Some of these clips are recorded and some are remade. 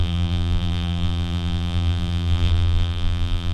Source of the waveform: remade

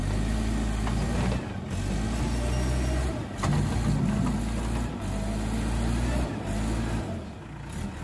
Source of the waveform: recorded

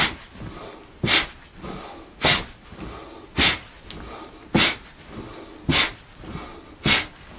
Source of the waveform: recorded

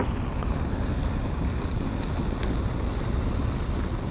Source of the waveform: recorded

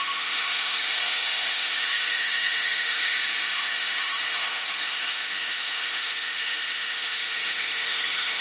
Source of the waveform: remade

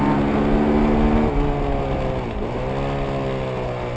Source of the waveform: recorded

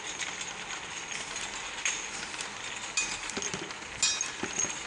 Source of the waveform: recorded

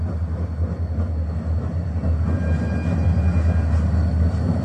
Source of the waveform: recorded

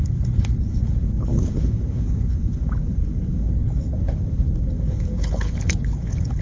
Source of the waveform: remade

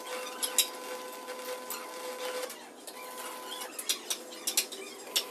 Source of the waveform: recorded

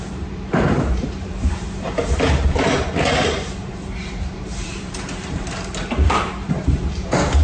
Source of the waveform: remade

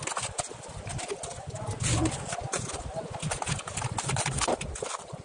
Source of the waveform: recorded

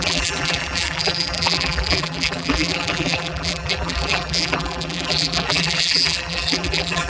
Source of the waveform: remade